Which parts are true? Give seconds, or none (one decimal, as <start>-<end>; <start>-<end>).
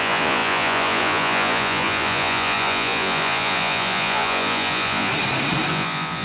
5.1-5.7